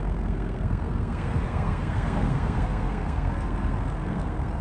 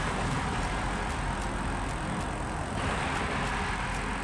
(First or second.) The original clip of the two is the second